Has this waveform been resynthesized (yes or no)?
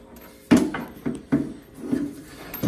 no